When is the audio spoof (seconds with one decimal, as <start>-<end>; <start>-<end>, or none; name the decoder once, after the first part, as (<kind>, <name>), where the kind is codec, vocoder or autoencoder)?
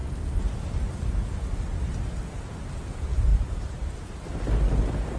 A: 3.3-4.3 (vocoder, BigVGAN v2)